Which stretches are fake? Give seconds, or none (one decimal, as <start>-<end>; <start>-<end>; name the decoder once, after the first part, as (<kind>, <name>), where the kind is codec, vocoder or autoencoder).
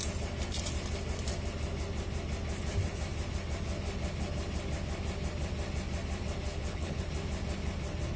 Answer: 6.5-7.0 (codec, HILCodec)